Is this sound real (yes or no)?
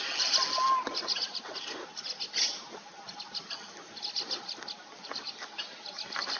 yes